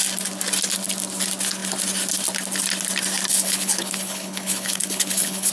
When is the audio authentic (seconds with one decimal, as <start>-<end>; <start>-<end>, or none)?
0.0-3.3